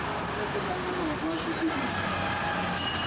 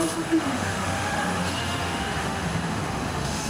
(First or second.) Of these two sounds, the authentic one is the first